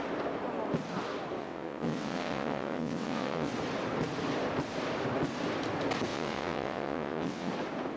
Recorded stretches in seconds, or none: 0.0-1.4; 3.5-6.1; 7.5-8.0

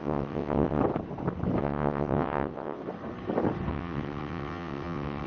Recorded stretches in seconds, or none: 0.8-1.6; 2.8-3.7

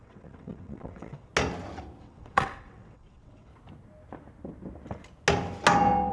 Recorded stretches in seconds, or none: 1.3-2.0; 3.5-6.1

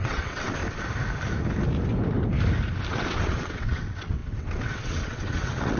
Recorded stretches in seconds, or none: 0.6-2.9

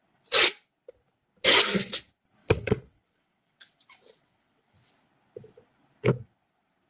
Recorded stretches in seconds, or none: 0.0-2.4; 4.9-6.9